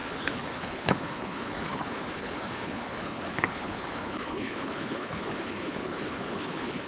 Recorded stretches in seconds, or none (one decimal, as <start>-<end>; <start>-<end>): none